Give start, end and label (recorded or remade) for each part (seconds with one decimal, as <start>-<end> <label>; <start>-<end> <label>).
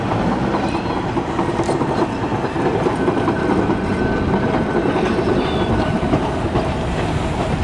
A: 0.0-2.3 remade; 2.3-5.2 recorded; 5.2-7.6 remade